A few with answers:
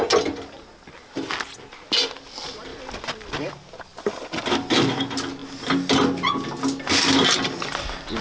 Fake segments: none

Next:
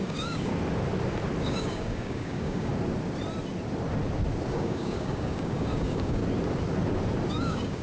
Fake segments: 0.0-0.5 (codec, DAC); 1.4-2.7; 4.5-6.2; 7.3-7.8

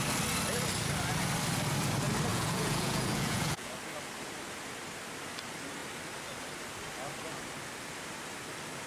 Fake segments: 2.3-3.7 (vocoder, Vocos)